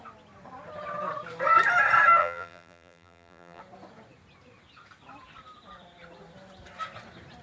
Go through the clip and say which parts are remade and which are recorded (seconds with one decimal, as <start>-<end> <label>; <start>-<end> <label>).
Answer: 0.0-2.2 recorded; 2.2-3.6 remade; 3.6-7.4 recorded